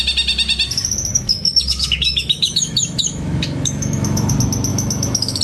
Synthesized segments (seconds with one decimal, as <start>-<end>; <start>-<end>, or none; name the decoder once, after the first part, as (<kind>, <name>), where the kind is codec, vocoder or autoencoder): 1.1-4.3 (autoencoder, DAC-VAE); 4.7-5.4